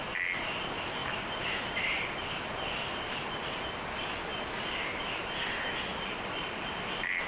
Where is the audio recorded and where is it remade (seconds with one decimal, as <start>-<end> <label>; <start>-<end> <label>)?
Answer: 0.0-1.0 recorded; 1.0-3.6 remade; 3.6-5.9 recorded; 5.9-7.3 remade